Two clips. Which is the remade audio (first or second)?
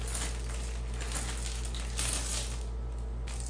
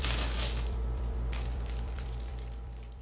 second